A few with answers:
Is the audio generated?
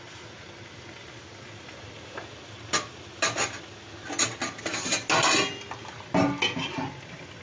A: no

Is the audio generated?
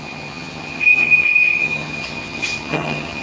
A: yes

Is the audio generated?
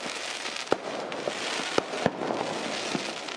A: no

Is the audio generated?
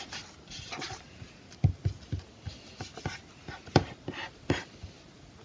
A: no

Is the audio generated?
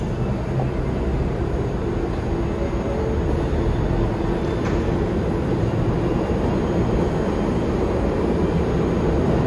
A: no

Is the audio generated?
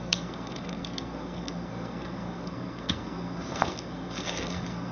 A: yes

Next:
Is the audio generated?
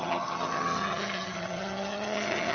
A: yes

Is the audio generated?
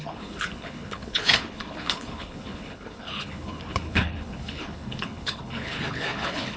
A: yes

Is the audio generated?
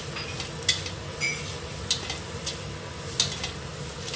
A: no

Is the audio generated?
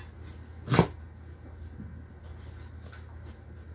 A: no